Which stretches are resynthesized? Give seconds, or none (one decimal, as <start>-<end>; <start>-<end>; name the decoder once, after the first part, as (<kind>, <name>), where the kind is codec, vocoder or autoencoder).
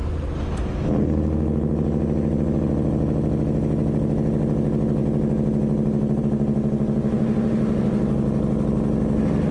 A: none